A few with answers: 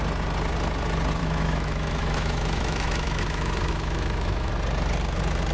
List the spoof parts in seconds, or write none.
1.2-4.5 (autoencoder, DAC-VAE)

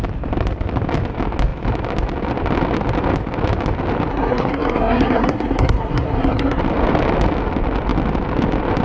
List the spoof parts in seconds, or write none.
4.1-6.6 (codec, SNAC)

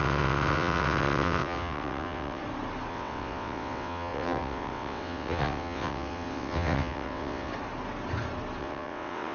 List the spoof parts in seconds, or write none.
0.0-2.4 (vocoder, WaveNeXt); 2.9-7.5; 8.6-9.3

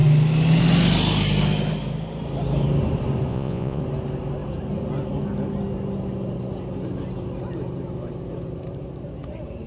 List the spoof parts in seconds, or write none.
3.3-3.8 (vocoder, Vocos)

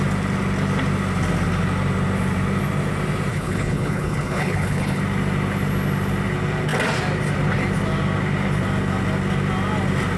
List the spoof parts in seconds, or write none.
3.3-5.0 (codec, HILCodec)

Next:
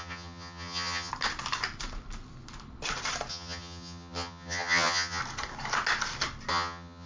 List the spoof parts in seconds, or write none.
0.0-1.1 (vocoder, HiFi-GAN); 3.3-5.2; 6.5-7.1

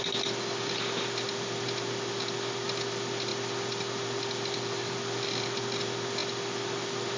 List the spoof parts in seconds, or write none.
none

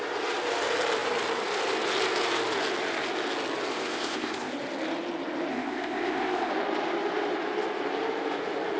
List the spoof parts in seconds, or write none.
3.7-4.5 (codec, ZipCodec); 5.5-6.5